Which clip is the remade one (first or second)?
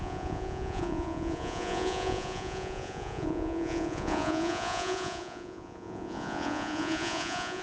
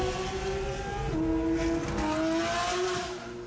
first